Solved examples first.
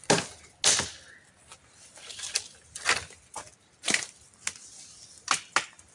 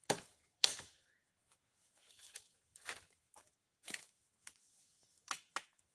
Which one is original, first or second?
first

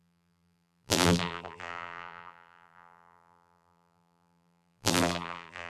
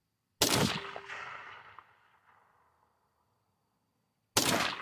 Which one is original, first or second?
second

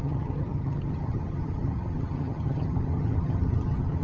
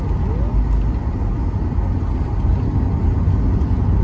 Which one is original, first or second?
second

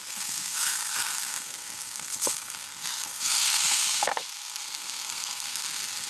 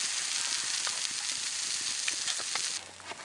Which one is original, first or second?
second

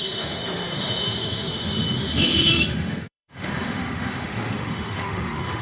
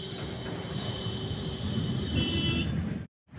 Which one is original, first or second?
second